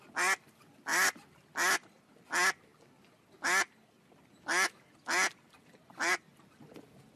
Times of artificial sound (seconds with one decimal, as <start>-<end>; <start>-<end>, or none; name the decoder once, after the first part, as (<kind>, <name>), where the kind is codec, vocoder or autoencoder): none